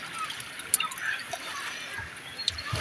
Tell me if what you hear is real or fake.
real